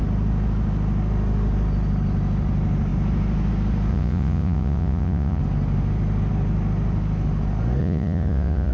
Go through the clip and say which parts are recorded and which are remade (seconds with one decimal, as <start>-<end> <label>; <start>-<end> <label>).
0.0-3.9 recorded; 3.9-5.4 remade; 5.4-7.8 recorded; 7.8-8.7 remade